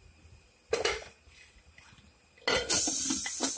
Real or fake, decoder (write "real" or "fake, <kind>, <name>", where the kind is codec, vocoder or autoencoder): real